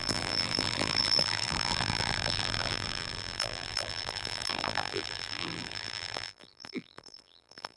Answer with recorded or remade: remade